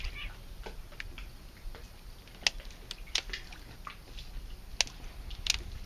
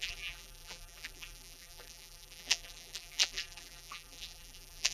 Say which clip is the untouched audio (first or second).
first